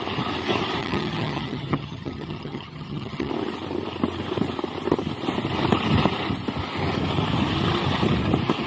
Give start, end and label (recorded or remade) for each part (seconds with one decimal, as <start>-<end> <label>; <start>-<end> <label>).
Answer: 0.0-0.8 recorded; 0.8-3.3 remade; 3.3-8.7 recorded